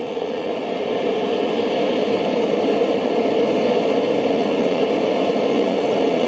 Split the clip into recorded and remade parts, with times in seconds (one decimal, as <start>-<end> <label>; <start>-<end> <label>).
0.0-0.5 remade; 0.5-4.3 recorded; 4.3-4.8 remade; 4.8-5.5 recorded; 5.5-6.3 remade